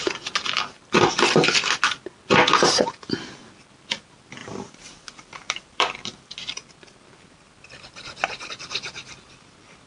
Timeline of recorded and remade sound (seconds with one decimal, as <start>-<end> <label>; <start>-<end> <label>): 0.0-4.4 recorded; 4.4-8.5 remade; 8.5-9.9 recorded